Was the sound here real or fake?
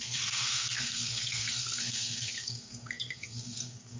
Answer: fake